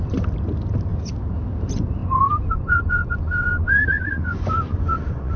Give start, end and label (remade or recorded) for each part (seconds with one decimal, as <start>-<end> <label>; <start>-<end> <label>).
0.0-2.0 recorded; 2.0-5.4 remade